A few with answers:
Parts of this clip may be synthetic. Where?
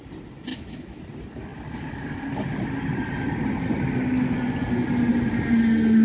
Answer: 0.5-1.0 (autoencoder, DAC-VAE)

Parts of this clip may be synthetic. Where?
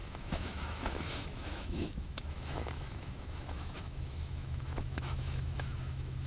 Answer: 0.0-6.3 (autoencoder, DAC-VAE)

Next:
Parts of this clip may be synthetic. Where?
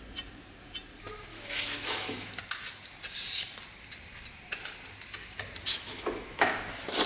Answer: 1.3-2.4 (autoencoder, DAC-VAE); 5.7-6.6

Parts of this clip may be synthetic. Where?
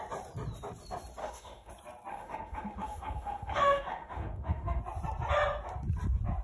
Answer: 1.2-1.7 (autoencoder, DAC-VAE); 2.1-4.8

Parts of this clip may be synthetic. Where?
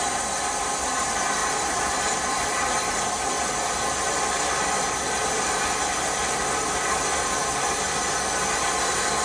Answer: none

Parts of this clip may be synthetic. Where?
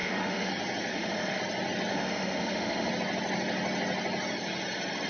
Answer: 0.0-0.5 (autoencoder, DAC-VAE); 0.9-1.4; 1.9-2.9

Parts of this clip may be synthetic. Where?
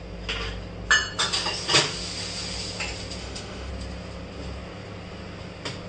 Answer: 3.2-3.7 (autoencoder, DAC-VAE)